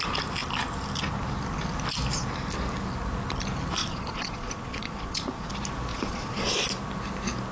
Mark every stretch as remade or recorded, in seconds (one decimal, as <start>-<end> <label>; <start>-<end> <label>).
0.0-3.8 recorded; 3.8-5.5 remade; 5.5-5.9 recorded; 5.9-6.5 remade; 6.5-7.5 recorded